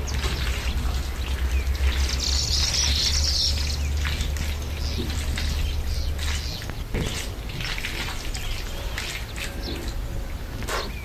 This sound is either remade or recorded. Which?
recorded